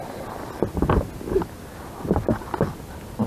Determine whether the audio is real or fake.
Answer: real